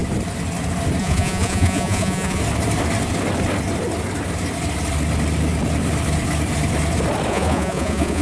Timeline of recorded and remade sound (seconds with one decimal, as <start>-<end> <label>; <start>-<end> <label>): 0.0-1.0 recorded; 1.0-2.4 remade; 2.4-7.3 recorded; 7.3-8.2 remade